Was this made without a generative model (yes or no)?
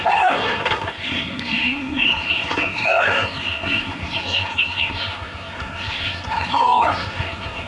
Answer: no